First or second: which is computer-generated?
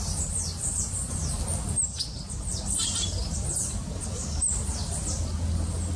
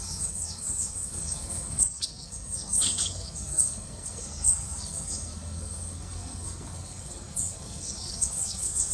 second